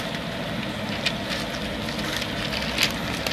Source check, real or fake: real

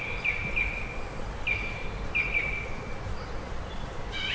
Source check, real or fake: real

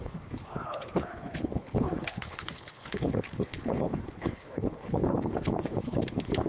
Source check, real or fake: fake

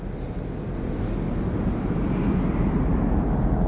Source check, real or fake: real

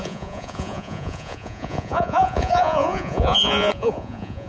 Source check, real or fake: fake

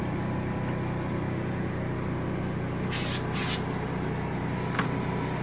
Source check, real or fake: real